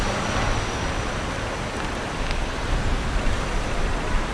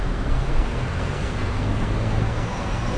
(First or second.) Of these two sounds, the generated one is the second